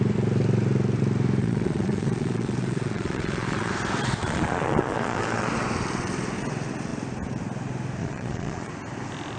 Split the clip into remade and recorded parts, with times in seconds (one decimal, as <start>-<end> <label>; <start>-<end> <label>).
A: 0.0-1.4 recorded; 1.4-3.7 remade; 3.7-4.2 recorded; 4.2-5.5 remade; 5.5-8.0 recorded; 8.0-8.7 remade; 8.7-9.4 recorded

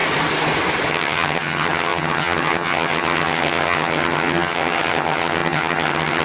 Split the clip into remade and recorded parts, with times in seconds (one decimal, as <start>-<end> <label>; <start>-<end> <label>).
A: 0.0-0.9 recorded; 0.9-6.2 remade

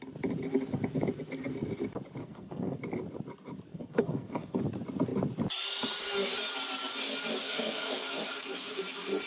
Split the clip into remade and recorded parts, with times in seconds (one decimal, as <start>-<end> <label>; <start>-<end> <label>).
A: 0.0-2.2 recorded; 2.2-2.8 remade; 2.8-3.7 recorded; 3.7-4.6 remade; 4.6-7.4 recorded; 7.4-8.8 remade; 8.8-9.3 recorded

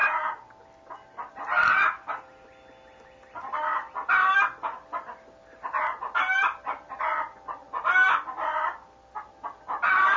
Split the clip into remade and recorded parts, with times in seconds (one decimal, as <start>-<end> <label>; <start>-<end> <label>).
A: 0.0-10.2 recorded

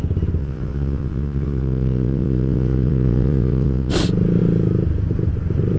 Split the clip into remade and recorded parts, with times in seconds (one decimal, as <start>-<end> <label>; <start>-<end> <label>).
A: 0.0-0.4 recorded; 0.4-3.9 remade; 3.9-5.8 recorded